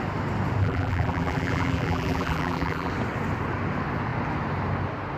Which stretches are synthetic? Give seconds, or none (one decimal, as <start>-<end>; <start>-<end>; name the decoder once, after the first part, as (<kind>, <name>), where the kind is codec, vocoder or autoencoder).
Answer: 0.6-2.9 (vocoder, BigVGAN v2)